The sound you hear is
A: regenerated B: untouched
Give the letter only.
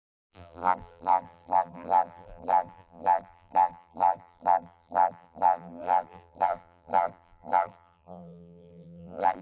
A